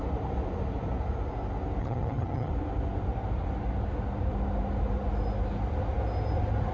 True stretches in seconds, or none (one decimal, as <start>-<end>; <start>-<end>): 0.0-1.8; 2.5-6.7